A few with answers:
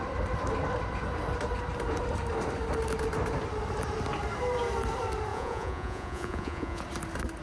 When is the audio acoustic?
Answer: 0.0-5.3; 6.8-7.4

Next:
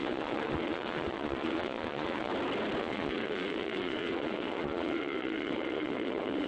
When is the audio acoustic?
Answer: 2.3-2.8

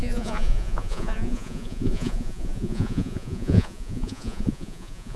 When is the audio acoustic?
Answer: none

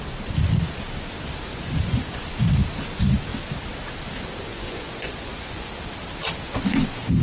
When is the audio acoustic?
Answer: 0.0-1.5; 2.3-4.5; 5.7-7.2

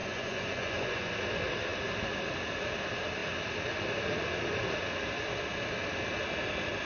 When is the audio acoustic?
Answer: 1.1-6.8

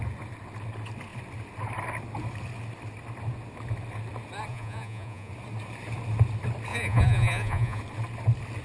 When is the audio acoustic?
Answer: 0.0-4.5; 5.3-6.7; 7.8-8.6

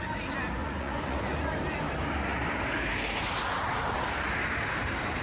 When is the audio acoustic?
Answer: 0.0-0.6; 1.2-5.2